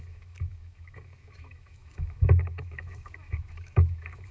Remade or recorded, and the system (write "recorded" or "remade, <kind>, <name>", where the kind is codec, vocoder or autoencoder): remade, autoencoder, DAC-VAE